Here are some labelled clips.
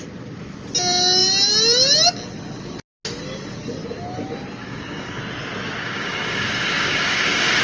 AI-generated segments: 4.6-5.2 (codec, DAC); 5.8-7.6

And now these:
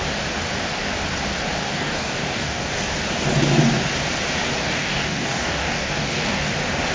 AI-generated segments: 1.6-2.7 (codec, DAC); 4.6-6.5

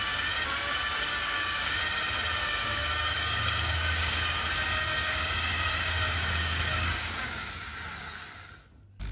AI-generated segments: 1.1-1.8 (codec, DAC); 2.4-7.5

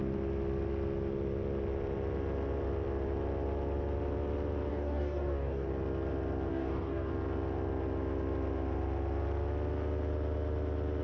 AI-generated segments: 4.7-5.7 (codec, DAC); 6.5-7.1

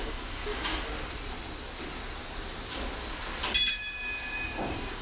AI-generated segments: 0.0-0.7 (codec, DAC); 3.7-5.0

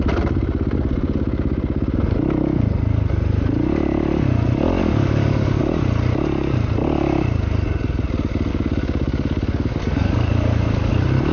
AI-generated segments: 4.8-5.6 (codec, DAC); 8.5-10.9